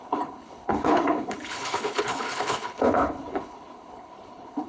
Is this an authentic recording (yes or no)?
no